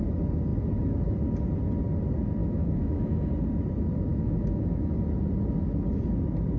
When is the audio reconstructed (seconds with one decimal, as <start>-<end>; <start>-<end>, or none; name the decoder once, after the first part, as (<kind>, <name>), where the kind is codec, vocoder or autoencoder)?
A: 2.4-3.3 (autoencoder, DAC-VAE); 4.1-4.9